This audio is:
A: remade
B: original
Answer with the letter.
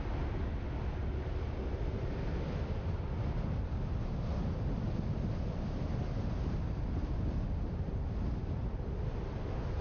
B